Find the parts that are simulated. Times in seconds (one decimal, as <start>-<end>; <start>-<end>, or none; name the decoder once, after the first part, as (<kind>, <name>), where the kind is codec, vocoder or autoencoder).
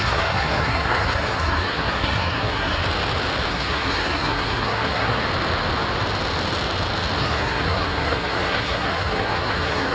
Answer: 0.0-2.8 (codec, SNAC); 3.5-5.2; 7.2-9.9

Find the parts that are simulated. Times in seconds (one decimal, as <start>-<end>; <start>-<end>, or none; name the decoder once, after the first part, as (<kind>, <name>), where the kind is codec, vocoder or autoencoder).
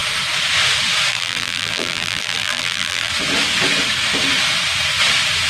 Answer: 1.1-3.1 (vocoder, BigVGAN v2)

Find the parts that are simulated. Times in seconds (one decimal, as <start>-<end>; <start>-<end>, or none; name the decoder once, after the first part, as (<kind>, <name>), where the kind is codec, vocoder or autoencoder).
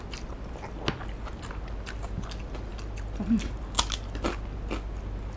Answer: none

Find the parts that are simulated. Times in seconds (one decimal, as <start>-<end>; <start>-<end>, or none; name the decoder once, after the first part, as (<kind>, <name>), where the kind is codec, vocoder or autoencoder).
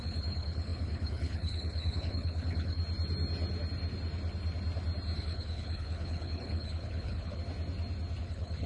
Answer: 0.0-2.8 (codec, HILCodec); 5.2-7.4; 8.2-8.7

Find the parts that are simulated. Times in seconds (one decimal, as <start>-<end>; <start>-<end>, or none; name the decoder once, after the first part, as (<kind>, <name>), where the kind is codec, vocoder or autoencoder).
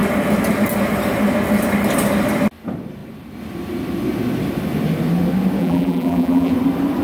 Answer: 5.6-6.5 (vocoder, BigVGAN v2)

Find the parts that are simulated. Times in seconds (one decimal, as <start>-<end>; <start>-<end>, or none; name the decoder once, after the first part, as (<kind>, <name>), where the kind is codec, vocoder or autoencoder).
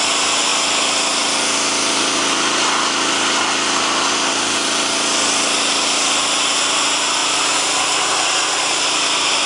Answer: none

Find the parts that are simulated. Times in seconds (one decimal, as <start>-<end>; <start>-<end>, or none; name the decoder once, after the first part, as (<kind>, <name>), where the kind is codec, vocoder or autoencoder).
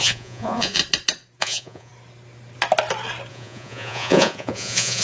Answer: 0.0-0.8 (vocoder, Vocos); 1.4-1.9; 3.3-5.0